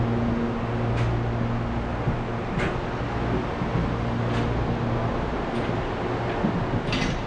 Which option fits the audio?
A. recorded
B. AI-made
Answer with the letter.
A